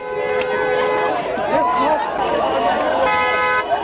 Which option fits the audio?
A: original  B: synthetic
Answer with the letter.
A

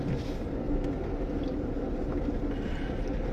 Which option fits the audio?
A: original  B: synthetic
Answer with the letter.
A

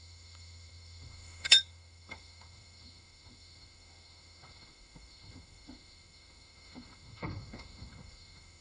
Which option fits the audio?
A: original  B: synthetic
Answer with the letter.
B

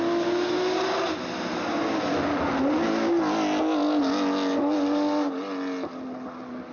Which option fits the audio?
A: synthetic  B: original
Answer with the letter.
B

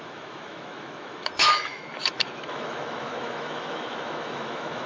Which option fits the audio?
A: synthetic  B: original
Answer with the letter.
A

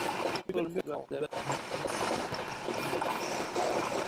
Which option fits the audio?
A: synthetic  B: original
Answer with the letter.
B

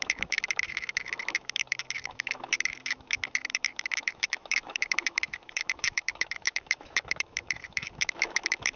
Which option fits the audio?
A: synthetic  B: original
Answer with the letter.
A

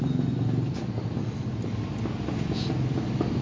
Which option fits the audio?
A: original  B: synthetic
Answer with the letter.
A